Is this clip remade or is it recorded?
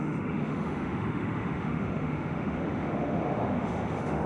remade